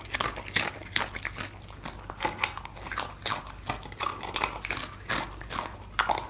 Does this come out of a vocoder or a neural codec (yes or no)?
no